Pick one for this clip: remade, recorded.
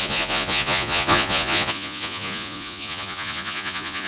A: remade